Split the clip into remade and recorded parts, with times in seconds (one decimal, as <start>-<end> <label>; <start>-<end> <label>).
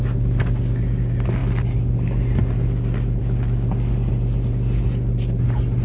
0.0-5.8 recorded